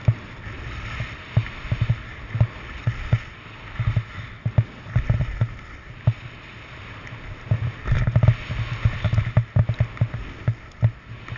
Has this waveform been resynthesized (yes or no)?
no